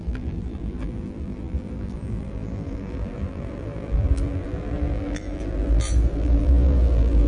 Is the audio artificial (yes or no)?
yes